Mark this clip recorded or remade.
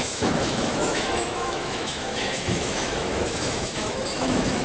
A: remade